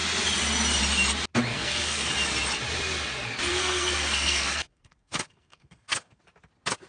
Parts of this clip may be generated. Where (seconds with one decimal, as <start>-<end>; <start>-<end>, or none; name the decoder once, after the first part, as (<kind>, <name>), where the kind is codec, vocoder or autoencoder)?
1.5-2.1 (codec, SNAC); 3.5-6.2